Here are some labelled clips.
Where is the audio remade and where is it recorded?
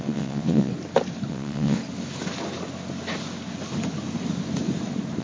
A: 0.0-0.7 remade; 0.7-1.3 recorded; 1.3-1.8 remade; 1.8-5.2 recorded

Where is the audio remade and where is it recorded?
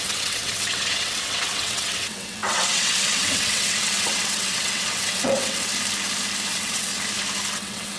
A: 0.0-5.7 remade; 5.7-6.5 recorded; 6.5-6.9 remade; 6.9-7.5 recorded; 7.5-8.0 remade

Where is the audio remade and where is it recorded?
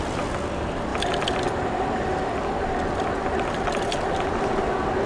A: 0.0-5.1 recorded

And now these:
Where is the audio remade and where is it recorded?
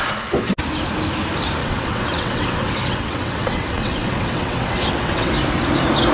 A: 0.0-1.6 recorded; 1.6-5.3 remade; 5.3-6.1 recorded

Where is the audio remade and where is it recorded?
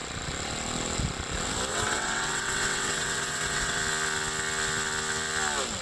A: 0.0-1.7 recorded; 1.7-3.8 remade; 3.8-5.8 recorded